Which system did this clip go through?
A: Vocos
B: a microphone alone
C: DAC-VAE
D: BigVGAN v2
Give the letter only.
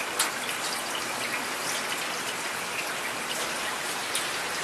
B